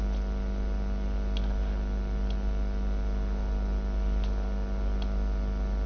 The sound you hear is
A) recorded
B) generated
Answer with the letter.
A